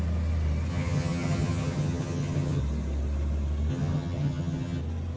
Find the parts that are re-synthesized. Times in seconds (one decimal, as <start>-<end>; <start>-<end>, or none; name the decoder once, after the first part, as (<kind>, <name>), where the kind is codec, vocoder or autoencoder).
0.7-2.6 (vocoder, HiFi-GAN); 3.7-4.8